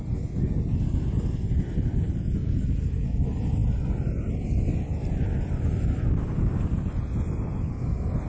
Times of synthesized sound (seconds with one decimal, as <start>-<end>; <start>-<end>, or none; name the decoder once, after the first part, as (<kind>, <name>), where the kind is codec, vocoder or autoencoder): 4.9-6.7 (vocoder, BigVGAN v2)